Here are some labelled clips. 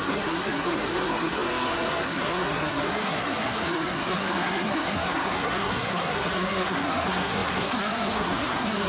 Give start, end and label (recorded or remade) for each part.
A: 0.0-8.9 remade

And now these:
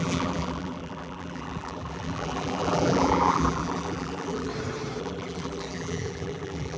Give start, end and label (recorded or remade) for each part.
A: 0.0-4.5 remade; 4.5-5.0 recorded; 5.0-6.8 remade

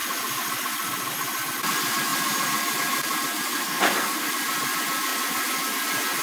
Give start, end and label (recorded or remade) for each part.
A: 0.0-3.5 recorded; 3.5-4.3 remade; 4.3-6.2 recorded

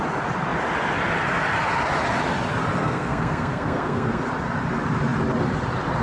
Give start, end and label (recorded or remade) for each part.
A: 0.0-2.8 recorded; 2.8-4.2 remade; 4.2-6.0 recorded

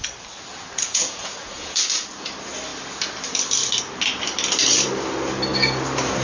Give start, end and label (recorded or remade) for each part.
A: 0.0-0.5 recorded; 0.5-1.8 remade; 1.8-6.2 recorded